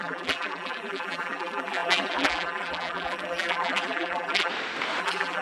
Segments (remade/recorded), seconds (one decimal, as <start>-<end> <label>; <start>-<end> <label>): 0.0-4.5 remade; 4.5-5.0 recorded; 5.0-5.4 remade